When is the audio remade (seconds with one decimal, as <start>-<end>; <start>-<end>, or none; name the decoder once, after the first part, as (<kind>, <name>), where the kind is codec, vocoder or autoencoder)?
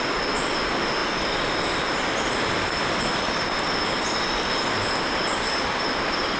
none